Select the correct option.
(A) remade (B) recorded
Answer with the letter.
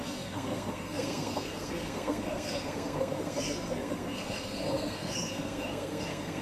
A